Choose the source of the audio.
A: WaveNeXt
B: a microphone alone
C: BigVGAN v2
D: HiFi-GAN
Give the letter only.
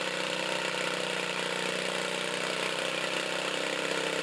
C